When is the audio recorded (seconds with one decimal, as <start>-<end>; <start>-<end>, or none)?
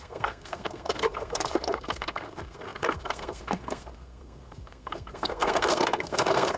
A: none